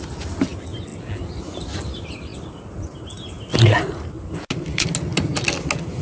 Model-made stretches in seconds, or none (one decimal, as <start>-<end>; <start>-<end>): none